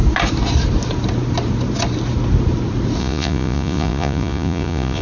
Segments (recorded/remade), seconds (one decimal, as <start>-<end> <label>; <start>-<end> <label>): 0.0-3.0 recorded; 3.0-5.0 remade